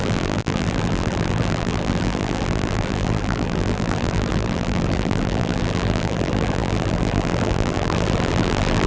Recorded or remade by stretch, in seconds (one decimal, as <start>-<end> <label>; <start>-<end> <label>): 0.0-8.9 remade